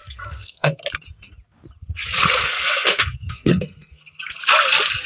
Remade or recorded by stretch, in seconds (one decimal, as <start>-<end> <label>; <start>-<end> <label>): 0.0-0.8 remade; 0.8-2.2 recorded; 2.2-4.2 remade; 4.2-5.1 recorded